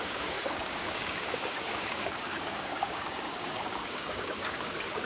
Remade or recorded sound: remade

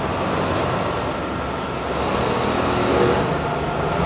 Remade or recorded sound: recorded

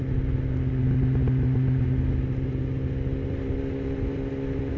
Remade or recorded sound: recorded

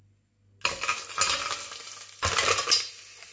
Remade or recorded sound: recorded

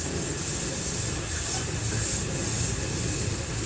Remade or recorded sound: recorded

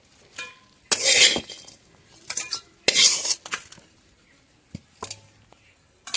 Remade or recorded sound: recorded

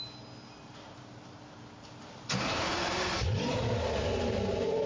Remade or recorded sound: recorded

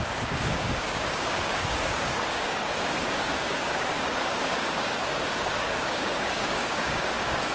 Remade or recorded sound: remade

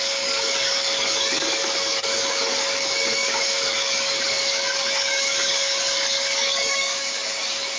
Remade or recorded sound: remade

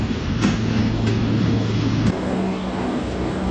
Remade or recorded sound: remade